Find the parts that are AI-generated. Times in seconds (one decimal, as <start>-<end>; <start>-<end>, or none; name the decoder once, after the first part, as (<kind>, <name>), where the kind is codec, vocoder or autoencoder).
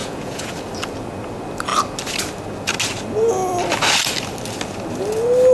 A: 0.0-0.5 (vocoder, Vocos)